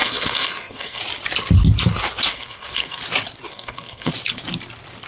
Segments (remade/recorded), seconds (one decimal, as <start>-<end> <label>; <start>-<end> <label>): 0.0-1.0 remade; 1.0-2.3 recorded; 2.3-3.0 remade; 3.0-3.5 recorded; 3.5-4.1 remade; 4.1-5.1 recorded